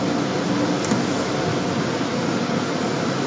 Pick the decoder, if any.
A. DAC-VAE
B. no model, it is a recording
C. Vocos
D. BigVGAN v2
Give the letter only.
B